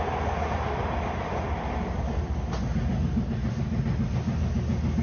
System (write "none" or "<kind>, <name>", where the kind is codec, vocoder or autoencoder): none